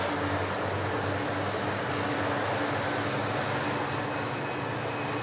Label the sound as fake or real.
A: real